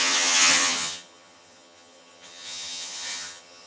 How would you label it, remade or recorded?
remade